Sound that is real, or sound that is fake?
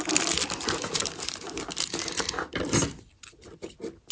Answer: fake